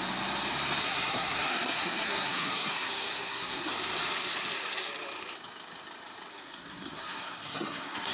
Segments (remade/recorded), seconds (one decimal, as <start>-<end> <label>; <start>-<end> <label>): 0.0-0.8 recorded; 0.8-3.7 remade; 3.7-6.3 recorded; 6.3-8.1 remade